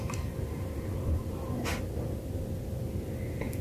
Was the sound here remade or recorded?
recorded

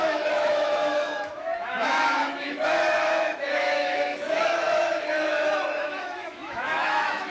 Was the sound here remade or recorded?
remade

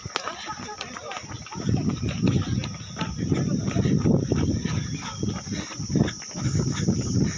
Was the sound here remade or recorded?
recorded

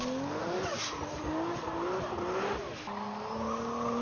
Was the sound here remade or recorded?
recorded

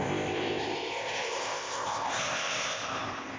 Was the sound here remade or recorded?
remade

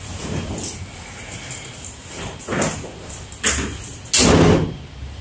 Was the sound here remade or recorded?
recorded